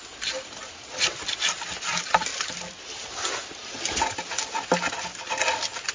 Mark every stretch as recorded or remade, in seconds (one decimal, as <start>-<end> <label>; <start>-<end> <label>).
0.0-5.9 recorded